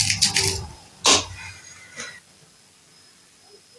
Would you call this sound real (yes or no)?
yes